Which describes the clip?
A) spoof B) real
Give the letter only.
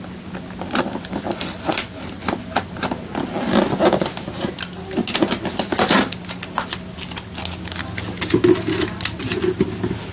B